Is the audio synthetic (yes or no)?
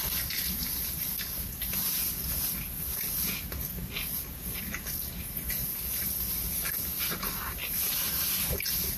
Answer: no